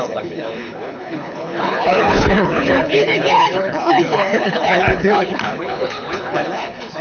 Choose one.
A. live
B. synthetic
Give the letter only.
B